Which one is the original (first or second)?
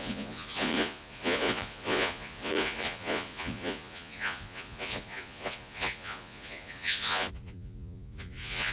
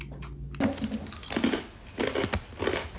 second